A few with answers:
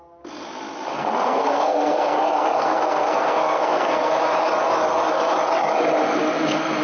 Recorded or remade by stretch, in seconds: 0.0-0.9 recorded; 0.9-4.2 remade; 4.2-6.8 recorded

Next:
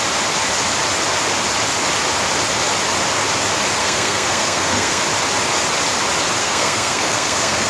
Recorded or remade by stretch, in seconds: 0.0-3.8 recorded; 3.8-5.0 remade; 5.0-6.4 recorded; 6.4-7.7 remade